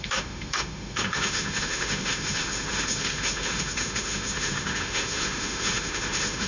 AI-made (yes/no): yes